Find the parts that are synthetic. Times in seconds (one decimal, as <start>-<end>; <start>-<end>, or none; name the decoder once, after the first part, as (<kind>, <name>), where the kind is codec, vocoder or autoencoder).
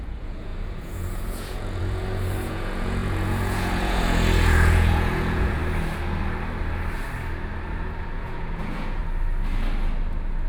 0.0-5.6 (vocoder, Vocos); 8.0-9.0